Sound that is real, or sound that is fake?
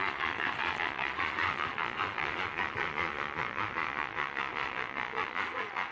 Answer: fake